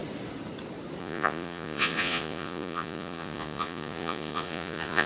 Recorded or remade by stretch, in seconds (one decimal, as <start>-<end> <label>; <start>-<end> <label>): 0.0-1.0 recorded; 1.0-5.1 remade